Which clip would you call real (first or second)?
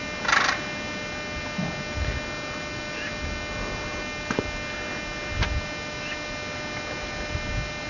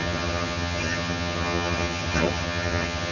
first